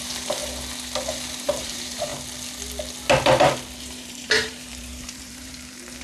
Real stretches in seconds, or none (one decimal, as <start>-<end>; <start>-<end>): 0.4-1.4; 2.1-3.8